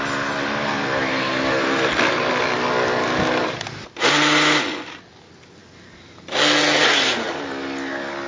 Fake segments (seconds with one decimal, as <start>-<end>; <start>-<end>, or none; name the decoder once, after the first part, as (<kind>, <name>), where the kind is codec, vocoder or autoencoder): none